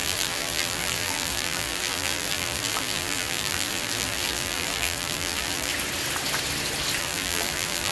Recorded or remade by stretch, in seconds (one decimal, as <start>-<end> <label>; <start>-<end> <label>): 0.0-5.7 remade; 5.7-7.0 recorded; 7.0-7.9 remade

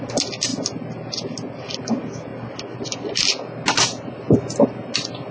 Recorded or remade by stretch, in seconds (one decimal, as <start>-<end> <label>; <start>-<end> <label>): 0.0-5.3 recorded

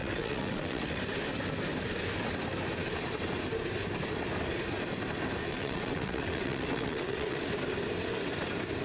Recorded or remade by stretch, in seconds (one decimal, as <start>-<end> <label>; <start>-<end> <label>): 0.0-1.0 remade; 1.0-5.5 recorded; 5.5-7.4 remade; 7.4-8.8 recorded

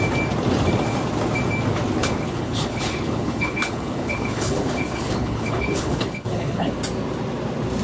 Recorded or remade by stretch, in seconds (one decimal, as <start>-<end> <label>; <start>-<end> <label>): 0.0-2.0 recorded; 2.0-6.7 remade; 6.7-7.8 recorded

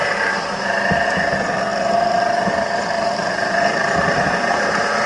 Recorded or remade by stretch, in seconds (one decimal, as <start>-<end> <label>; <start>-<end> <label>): 0.0-5.1 remade

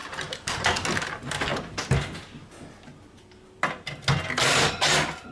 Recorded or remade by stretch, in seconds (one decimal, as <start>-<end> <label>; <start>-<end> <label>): 0.0-0.6 remade; 0.6-5.3 recorded

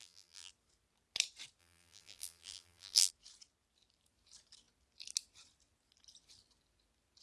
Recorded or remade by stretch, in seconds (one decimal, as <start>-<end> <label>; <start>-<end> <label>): 0.0-0.5 remade; 0.5-1.6 recorded; 1.6-3.1 remade; 3.1-7.2 recorded